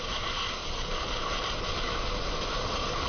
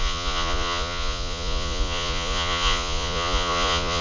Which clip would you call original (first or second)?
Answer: first